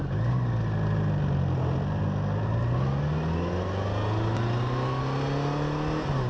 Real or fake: real